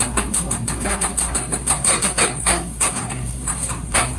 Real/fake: fake